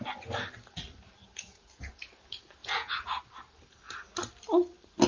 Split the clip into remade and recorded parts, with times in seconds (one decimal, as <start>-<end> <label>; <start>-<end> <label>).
0.0-1.2 recorded; 1.2-1.9 remade; 1.9-2.6 recorded; 2.6-3.2 remade; 3.2-5.1 recorded